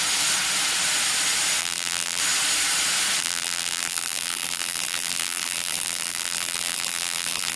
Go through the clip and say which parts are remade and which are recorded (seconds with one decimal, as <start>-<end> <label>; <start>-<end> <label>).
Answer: 0.0-1.6 recorded; 1.6-2.2 remade; 2.2-3.2 recorded; 3.2-7.6 remade